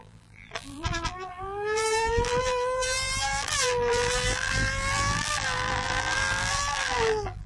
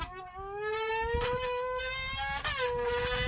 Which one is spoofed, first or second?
first